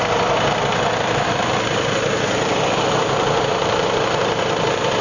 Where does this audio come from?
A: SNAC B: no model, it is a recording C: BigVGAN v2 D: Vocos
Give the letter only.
C